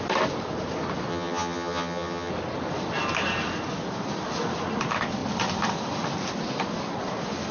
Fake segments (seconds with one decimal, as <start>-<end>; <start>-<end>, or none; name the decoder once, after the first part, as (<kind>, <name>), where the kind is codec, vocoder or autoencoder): 1.1-2.3 (vocoder, HiFi-GAN)